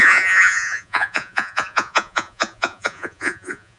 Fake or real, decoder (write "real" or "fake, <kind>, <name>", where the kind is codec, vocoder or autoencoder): fake, vocoder, Vocos